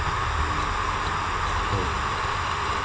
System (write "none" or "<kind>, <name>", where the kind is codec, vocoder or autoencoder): none